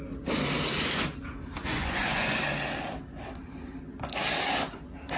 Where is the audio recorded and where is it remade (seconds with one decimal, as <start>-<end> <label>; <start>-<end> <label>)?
0.0-1.6 recorded; 1.6-2.4 remade; 2.4-5.2 recorded